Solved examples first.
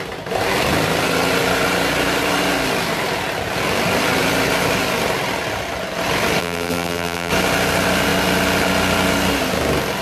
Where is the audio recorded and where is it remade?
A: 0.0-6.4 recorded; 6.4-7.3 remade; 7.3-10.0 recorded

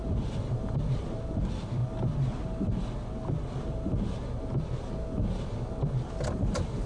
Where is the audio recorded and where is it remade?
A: 0.0-1.8 remade; 1.8-5.9 recorded; 5.9-6.9 remade

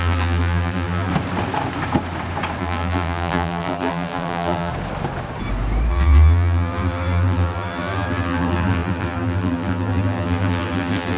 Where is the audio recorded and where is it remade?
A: 0.0-1.1 remade; 1.1-2.6 recorded; 2.6-4.7 remade; 4.7-5.9 recorded; 5.9-11.2 remade

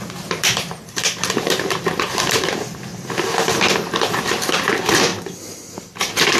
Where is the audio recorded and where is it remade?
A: 0.0-2.9 remade; 2.9-3.5 recorded; 3.5-5.1 remade; 5.1-6.0 recorded; 6.0-6.4 remade

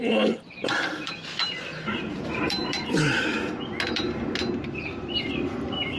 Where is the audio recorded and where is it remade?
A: 0.0-0.6 recorded; 0.6-3.5 remade; 3.5-6.0 recorded

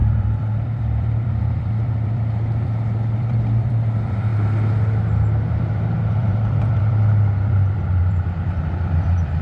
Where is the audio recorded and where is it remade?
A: 0.0-4.3 remade; 4.3-5.4 recorded; 5.4-9.4 remade

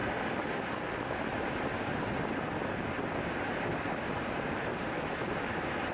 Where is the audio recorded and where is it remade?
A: 0.0-3.5 recorded; 3.5-5.9 remade

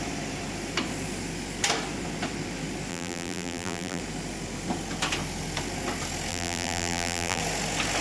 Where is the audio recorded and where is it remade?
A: 0.0-2.9 recorded; 2.9-4.0 remade; 4.0-6.3 recorded; 6.3-7.4 remade; 7.4-8.0 recorded